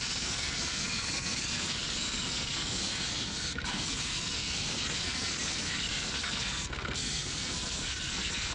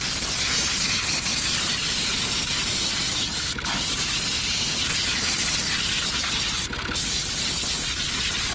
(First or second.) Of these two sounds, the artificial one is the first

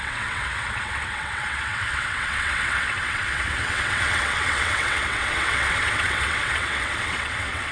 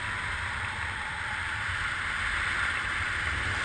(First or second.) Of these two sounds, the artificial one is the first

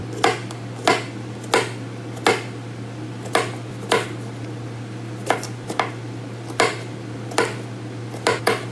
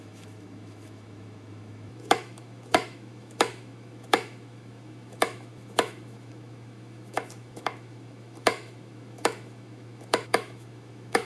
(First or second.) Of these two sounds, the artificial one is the second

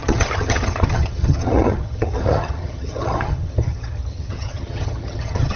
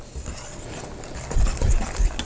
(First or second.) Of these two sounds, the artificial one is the first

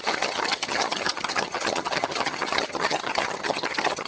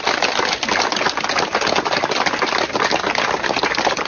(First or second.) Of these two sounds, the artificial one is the first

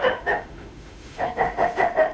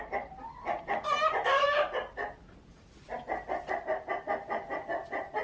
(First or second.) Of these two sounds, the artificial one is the first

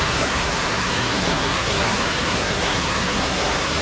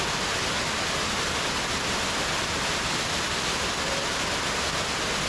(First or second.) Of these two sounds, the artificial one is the first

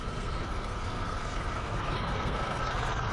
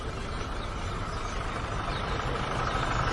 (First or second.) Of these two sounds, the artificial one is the first